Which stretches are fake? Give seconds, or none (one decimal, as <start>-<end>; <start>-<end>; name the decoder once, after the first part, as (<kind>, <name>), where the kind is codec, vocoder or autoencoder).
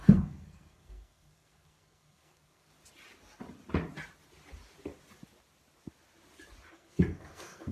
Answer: 0.0-2.7 (codec, SNAC); 6.7-7.7